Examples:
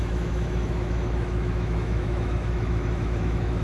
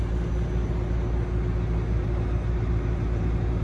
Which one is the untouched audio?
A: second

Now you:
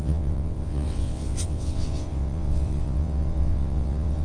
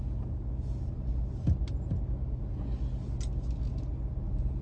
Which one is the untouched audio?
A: second